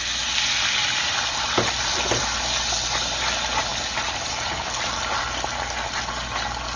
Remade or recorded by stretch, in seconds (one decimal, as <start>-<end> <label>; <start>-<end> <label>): 0.0-0.8 recorded; 0.8-2.2 remade; 2.2-6.8 recorded